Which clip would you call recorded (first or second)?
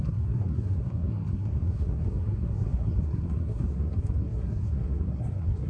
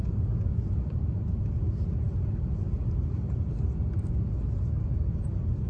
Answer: second